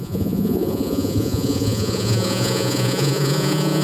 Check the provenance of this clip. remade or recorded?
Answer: remade